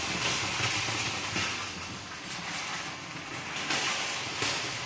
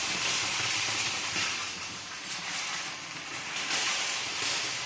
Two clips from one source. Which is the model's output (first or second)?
second